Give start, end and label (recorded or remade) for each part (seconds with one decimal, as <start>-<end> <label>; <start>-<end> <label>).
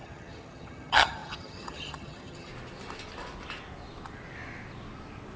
0.0-2.5 remade; 2.5-5.4 recorded